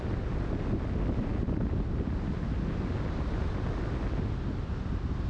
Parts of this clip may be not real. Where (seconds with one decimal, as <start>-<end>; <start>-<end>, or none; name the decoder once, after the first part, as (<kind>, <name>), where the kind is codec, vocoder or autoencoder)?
none